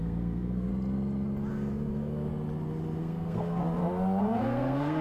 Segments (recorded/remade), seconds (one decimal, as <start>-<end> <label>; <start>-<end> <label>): 0.0-0.7 remade; 0.7-1.5 recorded; 1.5-2.3 remade; 2.3-3.0 recorded; 3.0-3.6 remade; 3.6-4.2 recorded; 4.2-5.0 remade